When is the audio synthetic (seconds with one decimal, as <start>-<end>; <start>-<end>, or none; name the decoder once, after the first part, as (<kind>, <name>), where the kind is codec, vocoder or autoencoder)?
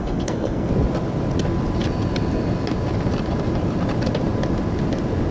0.0-0.7 (codec, SNAC)